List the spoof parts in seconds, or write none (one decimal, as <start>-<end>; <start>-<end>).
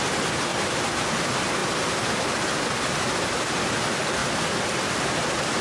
0.5-1.2; 1.6-3.5; 4.2-5.0